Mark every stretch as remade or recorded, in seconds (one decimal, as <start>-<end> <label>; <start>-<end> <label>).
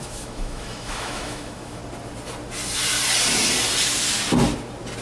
0.0-1.8 remade; 1.8-5.0 recorded